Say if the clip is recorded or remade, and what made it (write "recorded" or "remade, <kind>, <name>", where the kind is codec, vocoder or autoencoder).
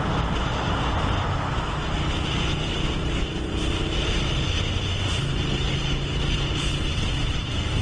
recorded